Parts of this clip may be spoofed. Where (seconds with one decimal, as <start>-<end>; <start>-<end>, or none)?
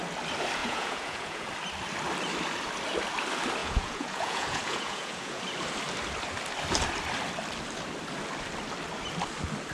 0.6-1.5; 3.6-5.4